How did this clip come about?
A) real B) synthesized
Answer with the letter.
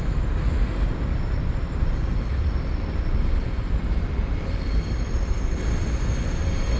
A